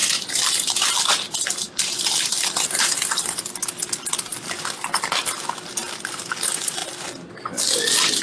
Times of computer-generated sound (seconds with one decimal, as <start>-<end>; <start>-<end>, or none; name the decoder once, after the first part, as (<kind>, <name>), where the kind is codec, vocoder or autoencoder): none